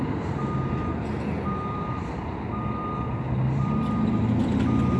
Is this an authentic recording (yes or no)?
yes